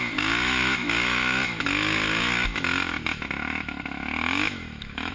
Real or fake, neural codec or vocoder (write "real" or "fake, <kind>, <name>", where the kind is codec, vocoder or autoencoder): fake, autoencoder, DAC-VAE